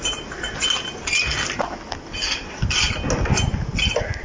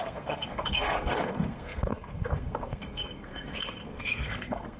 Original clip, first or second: first